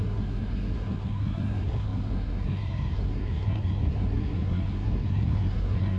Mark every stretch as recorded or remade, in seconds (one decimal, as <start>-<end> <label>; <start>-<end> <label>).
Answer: 0.0-6.0 remade